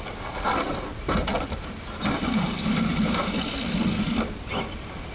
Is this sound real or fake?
real